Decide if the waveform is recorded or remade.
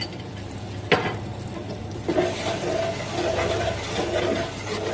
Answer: recorded